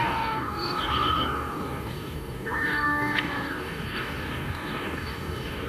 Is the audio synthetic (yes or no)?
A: yes